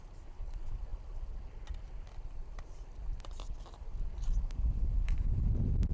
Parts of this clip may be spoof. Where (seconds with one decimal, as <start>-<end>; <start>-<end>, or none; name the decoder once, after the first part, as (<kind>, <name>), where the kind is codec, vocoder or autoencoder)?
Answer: none